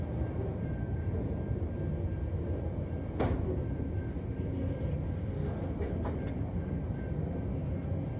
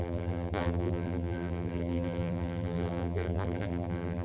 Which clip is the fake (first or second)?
second